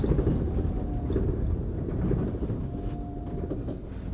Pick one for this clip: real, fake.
real